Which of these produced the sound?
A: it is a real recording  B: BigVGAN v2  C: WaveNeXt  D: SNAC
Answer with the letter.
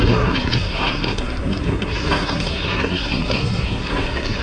D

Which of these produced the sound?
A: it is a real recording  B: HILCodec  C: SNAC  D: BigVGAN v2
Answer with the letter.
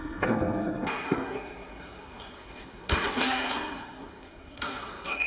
C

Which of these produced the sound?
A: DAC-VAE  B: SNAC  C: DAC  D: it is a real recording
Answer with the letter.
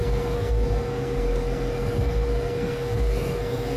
B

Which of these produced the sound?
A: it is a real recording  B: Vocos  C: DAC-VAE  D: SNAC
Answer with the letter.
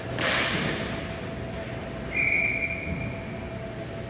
A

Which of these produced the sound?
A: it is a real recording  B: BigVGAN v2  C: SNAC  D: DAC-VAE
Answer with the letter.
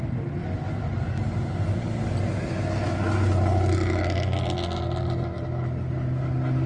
A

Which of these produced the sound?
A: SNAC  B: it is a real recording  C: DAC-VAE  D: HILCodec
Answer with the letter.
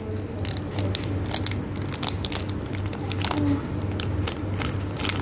B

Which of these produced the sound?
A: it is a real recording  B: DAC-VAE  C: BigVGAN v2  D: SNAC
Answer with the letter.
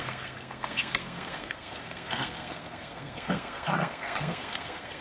D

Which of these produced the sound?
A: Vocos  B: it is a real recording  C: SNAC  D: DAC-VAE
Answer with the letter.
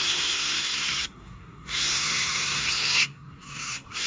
C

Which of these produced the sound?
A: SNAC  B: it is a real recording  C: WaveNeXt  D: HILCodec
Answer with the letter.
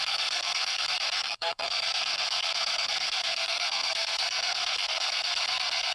A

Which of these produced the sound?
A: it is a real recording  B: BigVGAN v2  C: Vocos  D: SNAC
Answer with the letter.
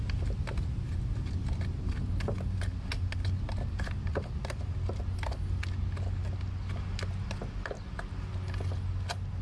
A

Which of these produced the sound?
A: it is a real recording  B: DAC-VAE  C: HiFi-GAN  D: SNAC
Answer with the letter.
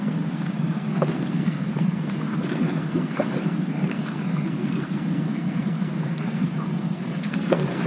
D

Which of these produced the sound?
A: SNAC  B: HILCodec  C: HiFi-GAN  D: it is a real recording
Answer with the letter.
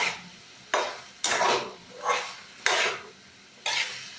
D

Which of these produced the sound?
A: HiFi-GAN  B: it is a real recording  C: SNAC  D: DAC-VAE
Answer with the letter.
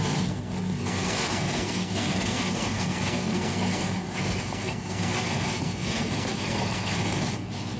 C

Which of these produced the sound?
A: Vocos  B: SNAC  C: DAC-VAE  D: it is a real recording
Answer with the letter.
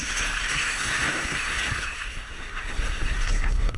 B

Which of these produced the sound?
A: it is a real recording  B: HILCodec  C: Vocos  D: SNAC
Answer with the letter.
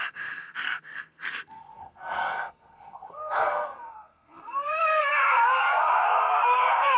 D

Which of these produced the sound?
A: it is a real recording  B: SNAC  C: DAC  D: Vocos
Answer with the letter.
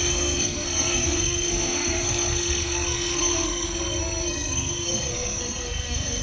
B